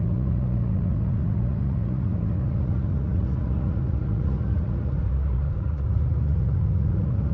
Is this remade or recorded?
remade